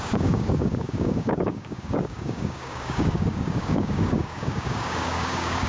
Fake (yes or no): yes